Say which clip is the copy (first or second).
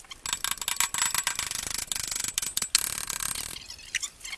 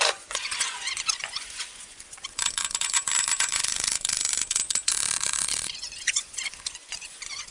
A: second